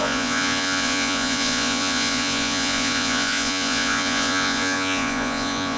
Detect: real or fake fake